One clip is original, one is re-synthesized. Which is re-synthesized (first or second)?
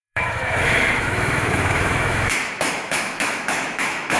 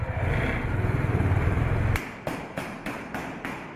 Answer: first